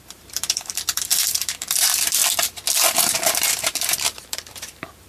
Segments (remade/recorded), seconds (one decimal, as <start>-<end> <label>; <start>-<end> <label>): 0.0-2.2 remade; 2.2-2.9 recorded; 2.9-5.1 remade